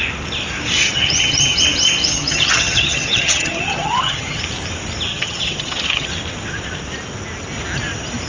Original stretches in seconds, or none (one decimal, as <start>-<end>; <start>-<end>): 0.0-0.8; 1.6-2.0; 4.4-5.1; 6.1-8.3